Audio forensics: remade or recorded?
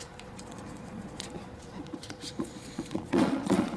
remade